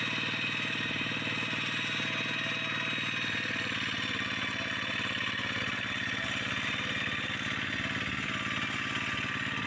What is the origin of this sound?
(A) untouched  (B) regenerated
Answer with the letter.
A